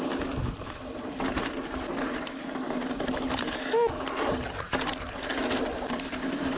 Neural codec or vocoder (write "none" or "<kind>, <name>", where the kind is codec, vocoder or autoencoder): none